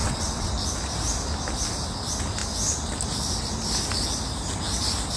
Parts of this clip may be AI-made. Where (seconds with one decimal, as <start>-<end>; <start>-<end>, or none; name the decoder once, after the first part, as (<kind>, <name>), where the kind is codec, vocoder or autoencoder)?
0.0-0.5 (vocoder, WaveNeXt)